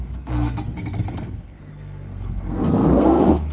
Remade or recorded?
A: remade